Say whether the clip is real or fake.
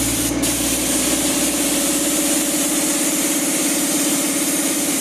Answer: fake